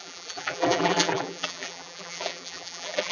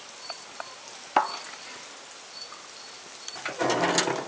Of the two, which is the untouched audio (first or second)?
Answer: second